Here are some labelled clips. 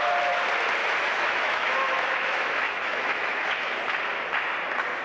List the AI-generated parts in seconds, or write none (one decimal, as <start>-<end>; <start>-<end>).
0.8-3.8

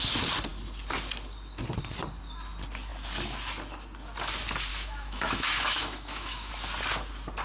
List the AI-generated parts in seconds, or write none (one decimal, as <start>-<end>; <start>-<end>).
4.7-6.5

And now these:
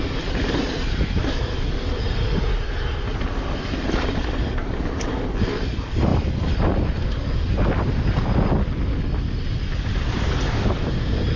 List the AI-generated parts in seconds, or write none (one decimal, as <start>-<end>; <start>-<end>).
1.2-1.7